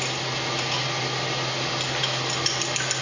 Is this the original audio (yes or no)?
yes